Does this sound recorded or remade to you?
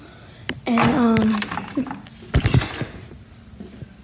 recorded